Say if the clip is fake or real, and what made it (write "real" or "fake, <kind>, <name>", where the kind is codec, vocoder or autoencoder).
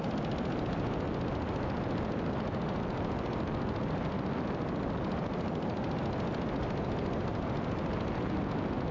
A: real